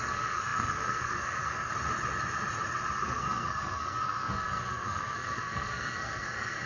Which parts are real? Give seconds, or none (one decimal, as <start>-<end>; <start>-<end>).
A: 1.7-3.0